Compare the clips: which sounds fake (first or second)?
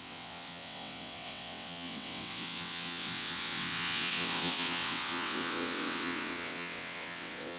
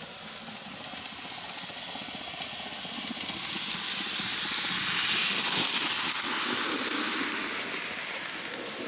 first